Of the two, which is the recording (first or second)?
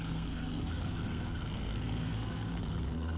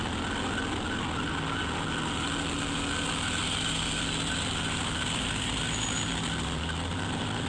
second